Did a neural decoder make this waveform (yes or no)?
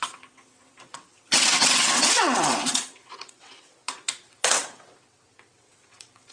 yes